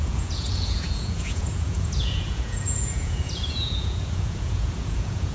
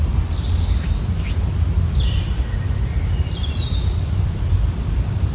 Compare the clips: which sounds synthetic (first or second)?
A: first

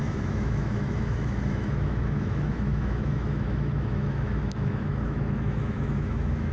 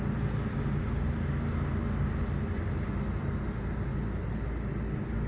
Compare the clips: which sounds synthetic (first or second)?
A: first